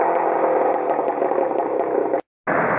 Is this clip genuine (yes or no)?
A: yes